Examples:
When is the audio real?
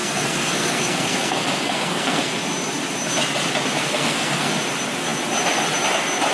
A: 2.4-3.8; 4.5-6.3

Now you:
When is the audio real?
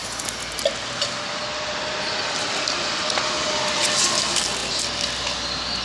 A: 0.0-5.8